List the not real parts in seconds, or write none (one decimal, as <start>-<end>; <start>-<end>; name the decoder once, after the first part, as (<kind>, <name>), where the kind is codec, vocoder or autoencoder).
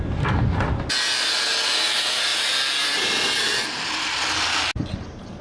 none